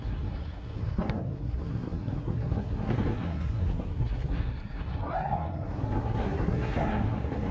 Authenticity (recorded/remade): remade